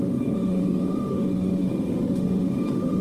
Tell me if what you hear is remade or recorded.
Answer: remade